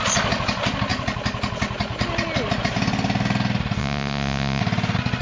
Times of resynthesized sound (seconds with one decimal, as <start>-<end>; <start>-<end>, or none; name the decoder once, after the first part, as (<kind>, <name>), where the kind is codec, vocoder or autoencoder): 3.8-4.6 (vocoder, Vocos)